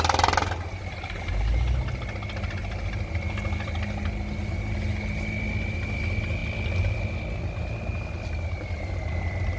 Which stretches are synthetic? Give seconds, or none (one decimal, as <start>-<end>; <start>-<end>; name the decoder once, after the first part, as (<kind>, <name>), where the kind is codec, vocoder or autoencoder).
none